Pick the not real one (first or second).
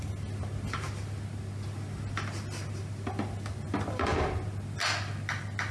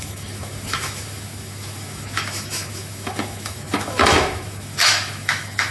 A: second